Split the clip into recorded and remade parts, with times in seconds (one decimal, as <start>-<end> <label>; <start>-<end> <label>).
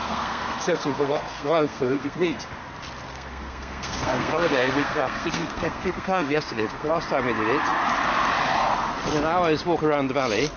0.0-2.4 remade; 2.4-3.1 recorded; 3.1-6.9 remade; 6.9-10.6 recorded